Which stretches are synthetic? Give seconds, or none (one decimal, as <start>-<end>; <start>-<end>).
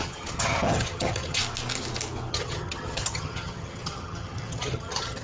0.0-1.4; 2.3-5.2